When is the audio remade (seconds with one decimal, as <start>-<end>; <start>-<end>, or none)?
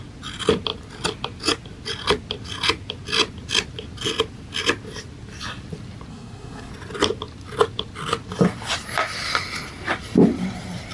6.1-6.7